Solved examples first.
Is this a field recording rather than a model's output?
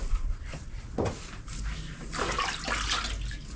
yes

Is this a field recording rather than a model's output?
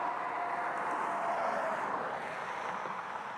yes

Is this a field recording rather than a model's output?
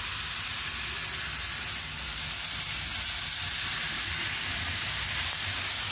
yes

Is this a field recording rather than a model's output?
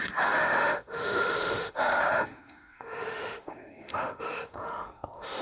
no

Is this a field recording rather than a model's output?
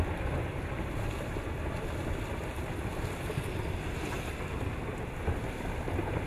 yes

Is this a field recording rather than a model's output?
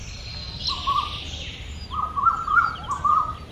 yes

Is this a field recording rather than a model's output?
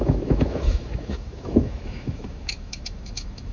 no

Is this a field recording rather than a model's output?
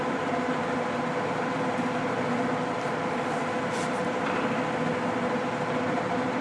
yes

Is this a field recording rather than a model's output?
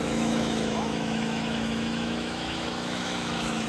no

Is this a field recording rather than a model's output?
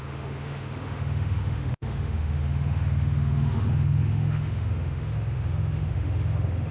no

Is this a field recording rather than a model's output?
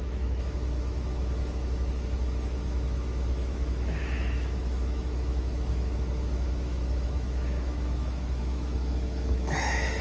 no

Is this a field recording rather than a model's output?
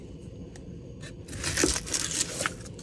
yes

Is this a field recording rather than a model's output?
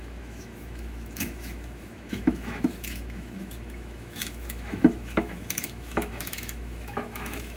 no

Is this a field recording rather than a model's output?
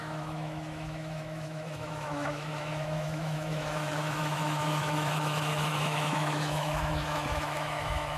no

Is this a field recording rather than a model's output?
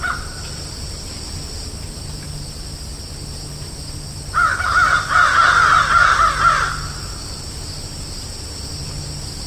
yes